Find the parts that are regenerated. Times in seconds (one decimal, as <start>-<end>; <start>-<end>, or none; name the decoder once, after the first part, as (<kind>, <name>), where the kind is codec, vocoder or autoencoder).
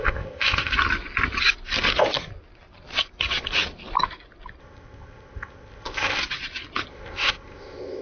0.0-0.7 (codec, ZipCodec); 4.6-6.2; 6.9-8.0